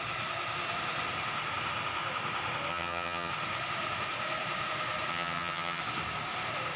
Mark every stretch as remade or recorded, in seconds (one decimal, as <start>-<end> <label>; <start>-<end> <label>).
0.0-2.7 recorded; 2.7-3.3 remade; 3.3-5.1 recorded; 5.1-5.8 remade; 5.8-6.8 recorded